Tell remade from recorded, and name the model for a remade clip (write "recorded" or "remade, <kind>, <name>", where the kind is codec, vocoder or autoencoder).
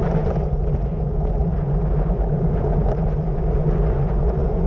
remade, vocoder, Vocos